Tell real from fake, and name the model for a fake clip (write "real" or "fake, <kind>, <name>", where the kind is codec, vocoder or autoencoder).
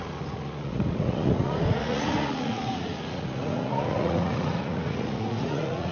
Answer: fake, vocoder, Vocos